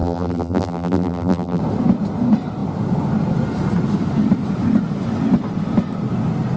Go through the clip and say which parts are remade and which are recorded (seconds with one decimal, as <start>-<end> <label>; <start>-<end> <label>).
0.0-1.6 remade; 1.6-6.6 recorded

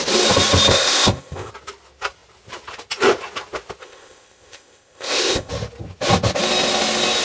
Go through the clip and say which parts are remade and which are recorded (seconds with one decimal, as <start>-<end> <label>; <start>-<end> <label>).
0.0-0.7 recorded; 0.7-1.5 remade; 1.5-3.8 recorded; 3.8-5.5 remade; 5.5-7.2 recorded